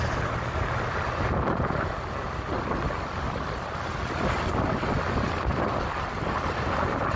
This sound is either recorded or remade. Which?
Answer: recorded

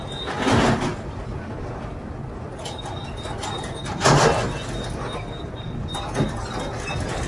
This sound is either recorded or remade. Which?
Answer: recorded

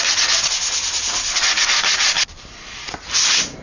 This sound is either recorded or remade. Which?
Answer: recorded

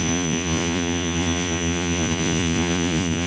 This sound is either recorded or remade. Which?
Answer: remade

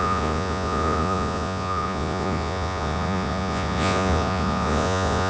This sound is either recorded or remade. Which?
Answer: remade